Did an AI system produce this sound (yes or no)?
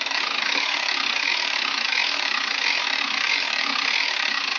yes